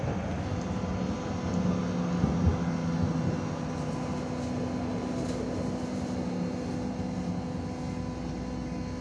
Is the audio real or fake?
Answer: real